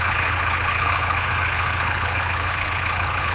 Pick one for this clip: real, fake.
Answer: fake